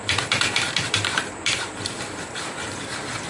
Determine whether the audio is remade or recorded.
remade